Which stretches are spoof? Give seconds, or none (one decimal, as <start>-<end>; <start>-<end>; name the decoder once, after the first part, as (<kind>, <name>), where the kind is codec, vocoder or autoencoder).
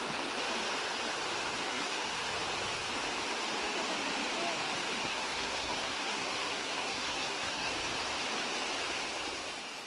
1.6-2.1 (codec, SNAC); 5.0-7.7